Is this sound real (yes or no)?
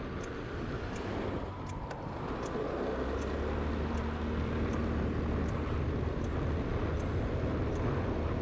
yes